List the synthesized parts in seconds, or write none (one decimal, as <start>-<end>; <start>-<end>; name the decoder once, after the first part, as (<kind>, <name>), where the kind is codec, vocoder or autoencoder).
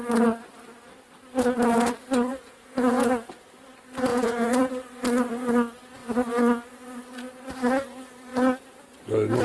2.3-3.3 (vocoder, Vocos); 4.1-4.7